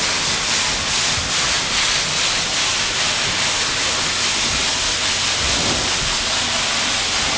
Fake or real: real